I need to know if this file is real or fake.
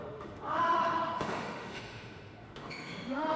fake